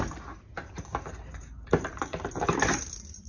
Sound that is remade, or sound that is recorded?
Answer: remade